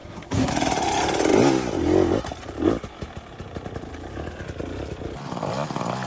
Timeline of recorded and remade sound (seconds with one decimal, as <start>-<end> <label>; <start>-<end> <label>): 0.0-0.5 remade; 0.5-6.1 recorded